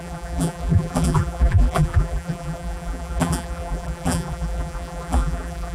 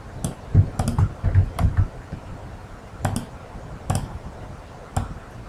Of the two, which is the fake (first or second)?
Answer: first